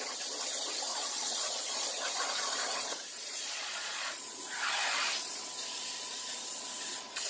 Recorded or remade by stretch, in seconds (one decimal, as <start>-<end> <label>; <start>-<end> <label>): 0.0-0.9 recorded; 0.9-4.4 remade; 4.4-7.3 recorded